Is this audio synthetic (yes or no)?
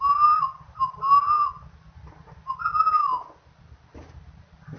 no